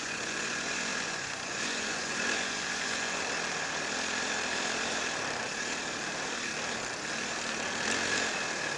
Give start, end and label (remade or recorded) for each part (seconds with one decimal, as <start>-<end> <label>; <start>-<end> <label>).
0.0-3.2 remade; 3.2-8.8 recorded

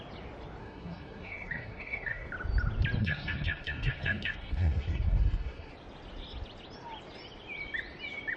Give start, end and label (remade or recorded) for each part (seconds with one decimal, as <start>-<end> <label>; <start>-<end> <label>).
0.0-0.6 recorded; 0.6-2.3 remade; 2.3-3.0 recorded; 3.0-5.7 remade; 5.7-8.4 recorded

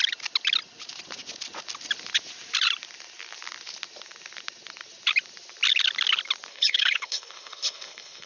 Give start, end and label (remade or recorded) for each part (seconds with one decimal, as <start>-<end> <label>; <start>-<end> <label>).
0.0-6.5 recorded; 6.5-8.3 remade

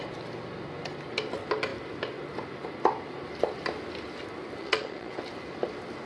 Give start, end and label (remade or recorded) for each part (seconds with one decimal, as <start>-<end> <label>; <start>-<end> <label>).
0.0-4.6 recorded; 4.6-5.2 remade; 5.2-6.1 recorded

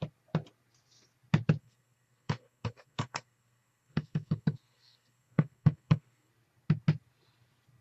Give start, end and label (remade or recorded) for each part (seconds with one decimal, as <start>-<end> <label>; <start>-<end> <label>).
0.0-1.6 recorded; 1.6-6.3 remade; 6.3-7.8 recorded

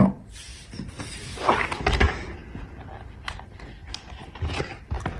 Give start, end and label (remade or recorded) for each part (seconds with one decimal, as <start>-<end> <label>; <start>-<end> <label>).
0.0-5.2 recorded

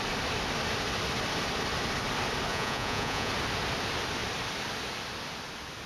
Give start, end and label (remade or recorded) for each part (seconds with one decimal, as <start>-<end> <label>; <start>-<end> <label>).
0.0-2.5 recorded; 2.5-3.3 remade; 3.3-5.9 recorded

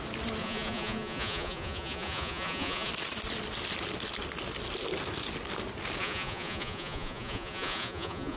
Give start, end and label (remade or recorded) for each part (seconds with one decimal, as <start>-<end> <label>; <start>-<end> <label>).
0.0-0.4 recorded; 0.4-2.9 remade; 2.9-6.0 recorded; 6.0-8.4 remade